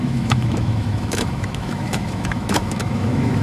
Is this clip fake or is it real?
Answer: fake